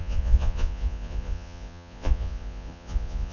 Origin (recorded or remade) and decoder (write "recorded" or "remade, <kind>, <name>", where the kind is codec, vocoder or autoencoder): remade, vocoder, Vocos